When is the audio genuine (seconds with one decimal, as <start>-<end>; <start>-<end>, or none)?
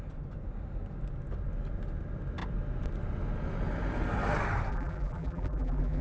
0.0-4.7